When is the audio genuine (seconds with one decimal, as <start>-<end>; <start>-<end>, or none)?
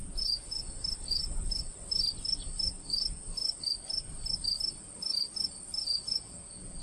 0.6-5.7